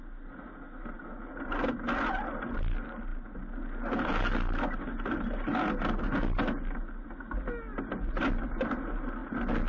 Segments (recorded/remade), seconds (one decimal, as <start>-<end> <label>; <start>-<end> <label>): 0.0-9.7 recorded